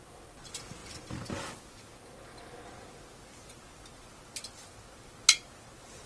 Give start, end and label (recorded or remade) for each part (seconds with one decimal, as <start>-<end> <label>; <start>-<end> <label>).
0.0-6.1 recorded